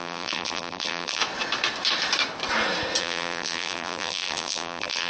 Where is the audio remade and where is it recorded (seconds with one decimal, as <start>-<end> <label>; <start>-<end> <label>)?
0.0-1.2 remade; 1.2-3.0 recorded; 3.0-5.1 remade